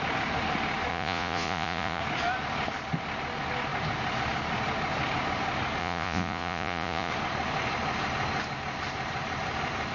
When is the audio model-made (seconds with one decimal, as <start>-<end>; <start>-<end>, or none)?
0.9-2.0; 5.8-7.1